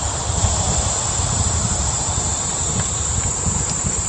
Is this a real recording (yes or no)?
no